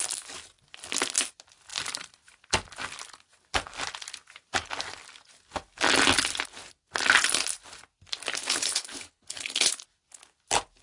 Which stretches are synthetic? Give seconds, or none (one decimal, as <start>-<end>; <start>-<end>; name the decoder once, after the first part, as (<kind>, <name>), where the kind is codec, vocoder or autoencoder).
8.4-9.7 (codec, HILCodec)